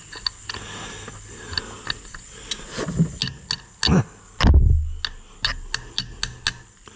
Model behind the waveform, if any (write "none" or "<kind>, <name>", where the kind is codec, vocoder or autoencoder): none